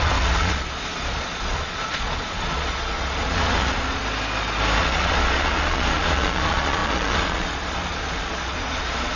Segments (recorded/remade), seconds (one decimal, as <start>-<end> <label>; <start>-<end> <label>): 0.0-4.0 remade; 4.0-4.8 recorded; 4.8-9.2 remade